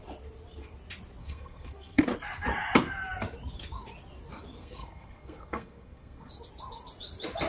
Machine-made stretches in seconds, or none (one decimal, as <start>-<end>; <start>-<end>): 1.2-2.0; 4.6-6.3